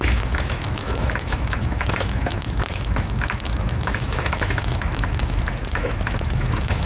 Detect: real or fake fake